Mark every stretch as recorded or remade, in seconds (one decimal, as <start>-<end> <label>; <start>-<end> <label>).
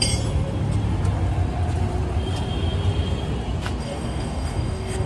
0.0-3.8 recorded; 3.8-5.1 remade